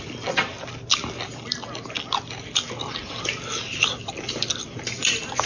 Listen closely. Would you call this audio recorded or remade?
recorded